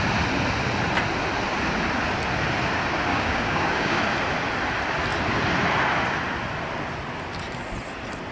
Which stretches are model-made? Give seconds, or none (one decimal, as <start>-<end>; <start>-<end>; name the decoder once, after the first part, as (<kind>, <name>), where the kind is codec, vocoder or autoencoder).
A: 3.1-4.0 (codec, DAC)